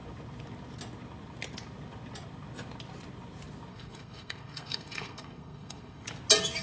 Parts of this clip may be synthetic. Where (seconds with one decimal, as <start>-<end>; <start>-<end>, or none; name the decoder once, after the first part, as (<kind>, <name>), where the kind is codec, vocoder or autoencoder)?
3.7-6.1 (codec, SNAC)